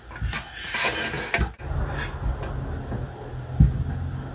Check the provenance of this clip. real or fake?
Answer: real